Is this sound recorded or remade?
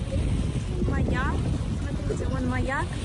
recorded